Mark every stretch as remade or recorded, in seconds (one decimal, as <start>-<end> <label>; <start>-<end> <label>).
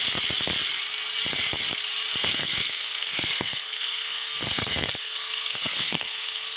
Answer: 0.0-2.2 recorded; 2.2-6.6 remade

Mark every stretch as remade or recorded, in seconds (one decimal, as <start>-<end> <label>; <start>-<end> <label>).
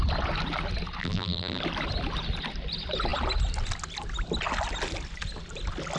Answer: 0.0-1.0 recorded; 1.0-1.6 remade; 1.6-6.0 recorded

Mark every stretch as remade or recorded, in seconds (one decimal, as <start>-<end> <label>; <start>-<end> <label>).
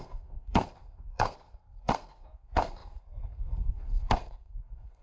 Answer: 0.0-5.0 remade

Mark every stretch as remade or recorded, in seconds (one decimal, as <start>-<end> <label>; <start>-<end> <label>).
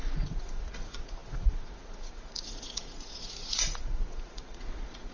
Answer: 0.0-5.1 remade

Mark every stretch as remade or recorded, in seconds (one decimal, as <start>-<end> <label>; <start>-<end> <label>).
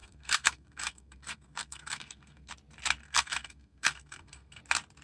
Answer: 0.0-2.5 remade; 2.5-3.0 recorded; 3.0-4.6 remade; 4.6-5.0 recorded